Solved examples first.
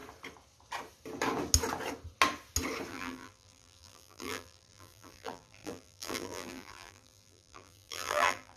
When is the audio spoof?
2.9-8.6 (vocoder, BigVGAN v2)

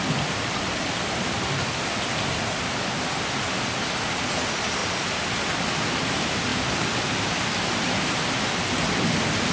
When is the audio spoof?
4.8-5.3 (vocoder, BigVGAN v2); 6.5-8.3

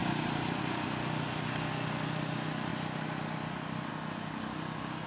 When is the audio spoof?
0.0-0.6 (vocoder, BigVGAN v2)

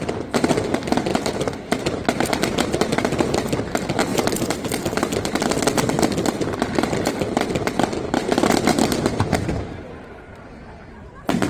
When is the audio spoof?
1.1-2.9 (vocoder, BigVGAN v2); 4.1-4.8; 8.2-10.9

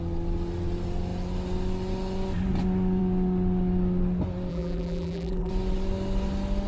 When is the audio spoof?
4.5-5.5 (vocoder, BigVGAN v2)

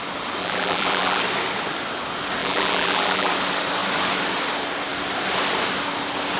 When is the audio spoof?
0.4-1.2 (vocoder, BigVGAN v2); 2.4-3.3